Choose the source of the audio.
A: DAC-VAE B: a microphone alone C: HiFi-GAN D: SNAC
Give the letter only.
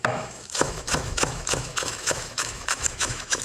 A